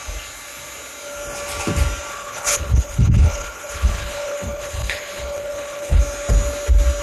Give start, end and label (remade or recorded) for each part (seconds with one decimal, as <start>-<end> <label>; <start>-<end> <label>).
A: 0.0-2.1 recorded; 2.1-6.0 remade; 6.0-7.0 recorded